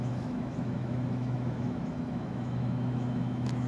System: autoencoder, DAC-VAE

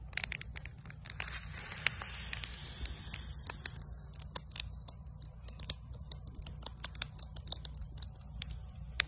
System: none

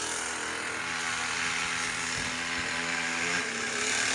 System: none